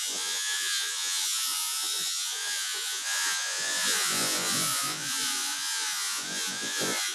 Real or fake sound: fake